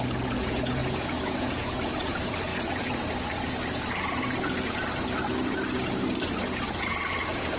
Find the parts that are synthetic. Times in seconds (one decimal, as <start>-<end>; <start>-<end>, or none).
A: 0.0-2.5; 6.8-7.6